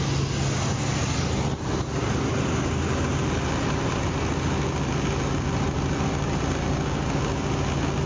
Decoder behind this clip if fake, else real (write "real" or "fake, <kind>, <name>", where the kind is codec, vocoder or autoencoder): real